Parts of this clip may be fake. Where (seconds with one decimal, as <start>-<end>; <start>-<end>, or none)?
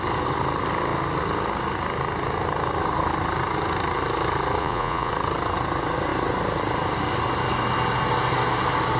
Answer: 4.6-5.1